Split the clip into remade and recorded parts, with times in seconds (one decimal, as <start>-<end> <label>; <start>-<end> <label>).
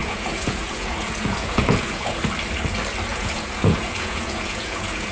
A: 0.0-2.2 remade; 2.2-3.1 recorded; 3.1-5.1 remade